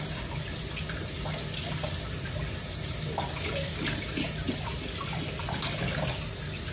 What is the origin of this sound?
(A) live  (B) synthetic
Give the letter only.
A